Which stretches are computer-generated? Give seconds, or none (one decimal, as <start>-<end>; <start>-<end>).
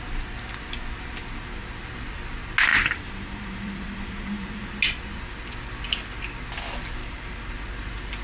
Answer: 2.7-4.6; 7.0-7.5